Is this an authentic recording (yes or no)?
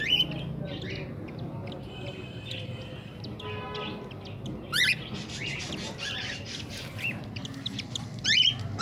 yes